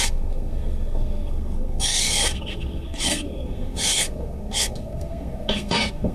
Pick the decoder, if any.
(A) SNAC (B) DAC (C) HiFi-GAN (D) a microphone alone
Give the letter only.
A